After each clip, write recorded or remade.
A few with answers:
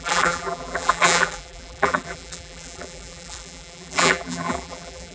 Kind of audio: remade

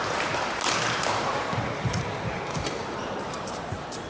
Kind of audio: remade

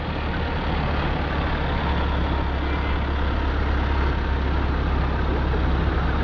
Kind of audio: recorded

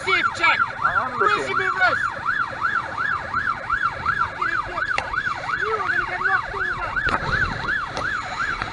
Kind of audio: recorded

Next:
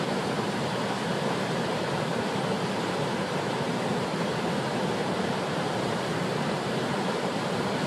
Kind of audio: remade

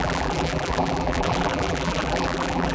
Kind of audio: remade